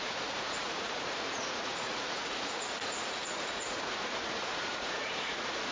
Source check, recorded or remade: remade